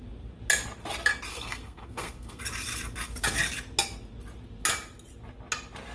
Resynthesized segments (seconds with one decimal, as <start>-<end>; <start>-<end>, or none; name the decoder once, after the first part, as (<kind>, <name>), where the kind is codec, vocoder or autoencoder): 1.3-2.4 (codec, SNAC)